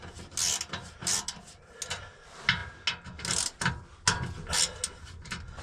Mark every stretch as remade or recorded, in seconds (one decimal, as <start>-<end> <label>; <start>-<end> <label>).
0.0-5.6 recorded